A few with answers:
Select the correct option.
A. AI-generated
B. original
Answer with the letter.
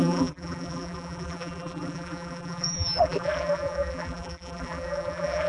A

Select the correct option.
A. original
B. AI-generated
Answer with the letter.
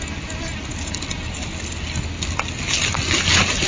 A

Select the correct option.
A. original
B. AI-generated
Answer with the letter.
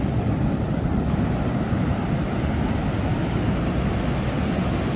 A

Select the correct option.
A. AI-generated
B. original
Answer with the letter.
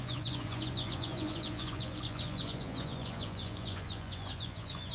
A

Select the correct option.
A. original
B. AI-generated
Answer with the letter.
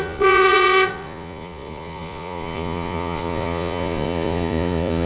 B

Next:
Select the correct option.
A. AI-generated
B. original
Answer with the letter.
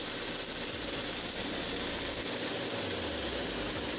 B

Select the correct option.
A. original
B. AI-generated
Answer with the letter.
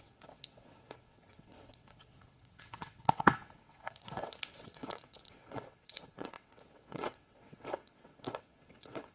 B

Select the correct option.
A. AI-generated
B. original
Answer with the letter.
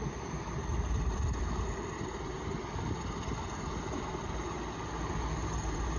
B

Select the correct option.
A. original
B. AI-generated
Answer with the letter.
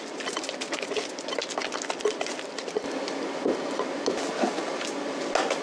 A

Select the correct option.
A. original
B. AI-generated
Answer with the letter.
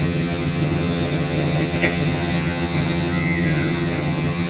B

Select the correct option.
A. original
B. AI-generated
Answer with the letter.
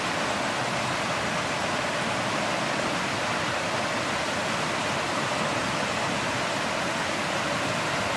A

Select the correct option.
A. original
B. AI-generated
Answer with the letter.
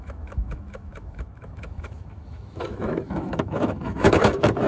B